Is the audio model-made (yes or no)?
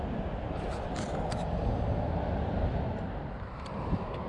no